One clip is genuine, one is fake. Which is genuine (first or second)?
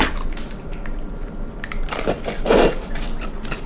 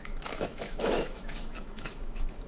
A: first